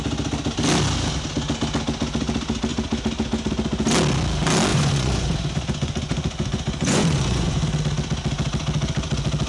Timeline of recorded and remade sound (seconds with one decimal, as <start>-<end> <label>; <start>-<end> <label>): 0.0-4.7 recorded; 4.7-7.6 remade; 7.6-9.5 recorded